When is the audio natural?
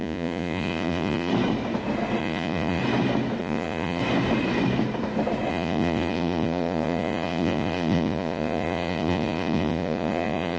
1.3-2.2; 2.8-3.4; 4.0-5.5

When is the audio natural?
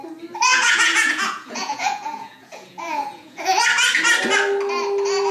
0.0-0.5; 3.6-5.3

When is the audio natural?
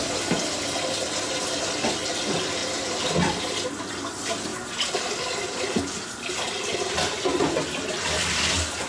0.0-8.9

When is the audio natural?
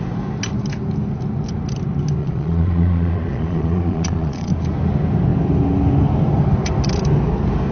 0.0-2.2; 4.5-7.7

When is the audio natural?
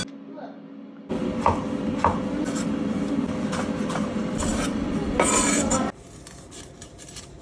0.0-7.4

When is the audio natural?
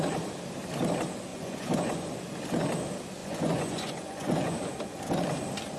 0.0-1.3; 2.2-3.2; 4.7-5.8